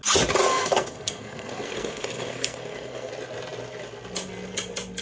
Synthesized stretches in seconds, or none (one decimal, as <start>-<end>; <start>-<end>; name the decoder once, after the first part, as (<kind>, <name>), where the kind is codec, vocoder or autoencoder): 0.5-3.1 (codec, SNAC)